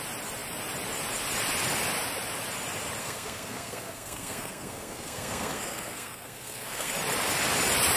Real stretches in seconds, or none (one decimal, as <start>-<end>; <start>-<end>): 0.0-3.0; 6.9-8.0